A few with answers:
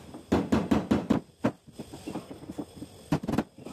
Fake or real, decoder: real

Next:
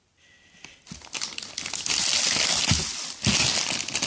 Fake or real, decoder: real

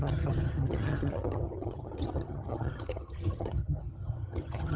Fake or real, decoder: fake, vocoder, HiFi-GAN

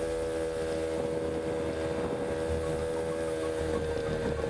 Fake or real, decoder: real